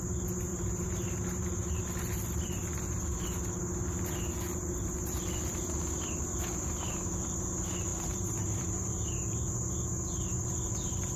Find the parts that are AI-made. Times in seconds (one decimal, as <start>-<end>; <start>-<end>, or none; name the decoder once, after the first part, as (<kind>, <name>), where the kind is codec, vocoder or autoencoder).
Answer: 0.5-1.8 (vocoder, BigVGAN v2); 7.9-9.7